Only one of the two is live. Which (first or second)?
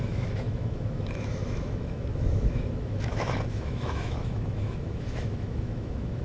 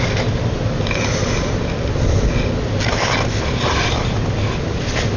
second